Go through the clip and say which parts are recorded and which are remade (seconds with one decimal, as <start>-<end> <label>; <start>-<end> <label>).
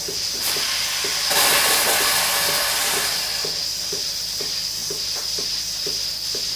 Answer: 0.0-6.6 recorded